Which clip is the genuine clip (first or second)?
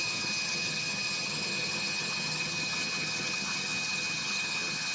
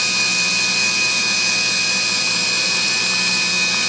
second